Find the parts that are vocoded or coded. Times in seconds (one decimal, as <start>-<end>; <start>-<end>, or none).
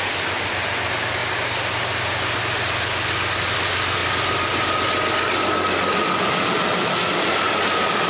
none